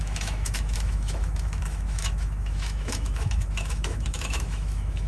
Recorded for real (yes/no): no